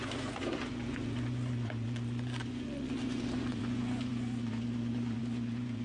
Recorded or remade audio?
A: remade